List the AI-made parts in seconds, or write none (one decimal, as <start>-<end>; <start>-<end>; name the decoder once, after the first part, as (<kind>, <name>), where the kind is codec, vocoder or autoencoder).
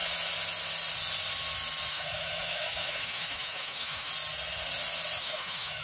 1.9-4.1 (autoencoder, DAC-VAE); 5.2-5.8